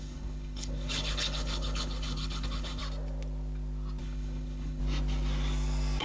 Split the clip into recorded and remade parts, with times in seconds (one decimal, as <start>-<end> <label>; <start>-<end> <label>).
0.0-2.8 remade; 2.8-4.0 recorded; 4.0-4.8 remade; 4.8-6.0 recorded